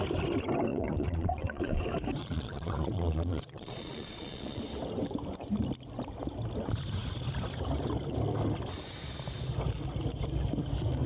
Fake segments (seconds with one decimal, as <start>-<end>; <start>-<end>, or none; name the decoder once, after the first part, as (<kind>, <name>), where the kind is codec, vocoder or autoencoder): 0.7-1.8 (vocoder, Vocos); 2.2-4.6